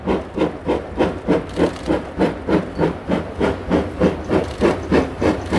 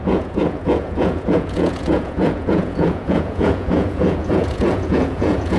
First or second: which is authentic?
first